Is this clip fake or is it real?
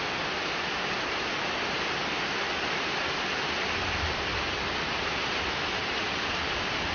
real